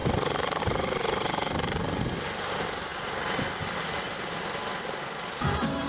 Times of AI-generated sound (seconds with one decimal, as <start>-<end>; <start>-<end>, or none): none